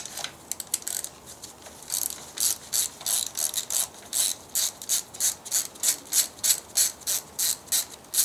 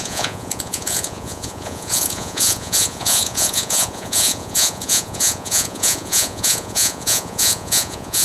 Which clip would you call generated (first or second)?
second